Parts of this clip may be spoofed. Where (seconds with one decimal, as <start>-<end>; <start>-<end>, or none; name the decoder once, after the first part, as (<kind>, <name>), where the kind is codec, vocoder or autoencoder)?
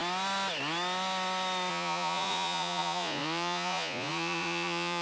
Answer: 1.7-5.0 (vocoder, Vocos)